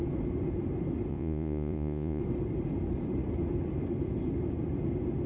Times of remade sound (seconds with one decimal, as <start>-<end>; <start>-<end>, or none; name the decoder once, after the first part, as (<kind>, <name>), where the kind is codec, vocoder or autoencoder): 1.1-2.2 (vocoder, Vocos)